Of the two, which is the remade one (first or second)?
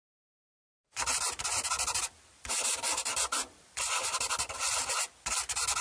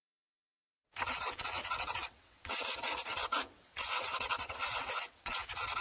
second